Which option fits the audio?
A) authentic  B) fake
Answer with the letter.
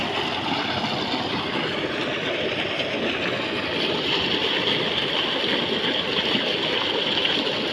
A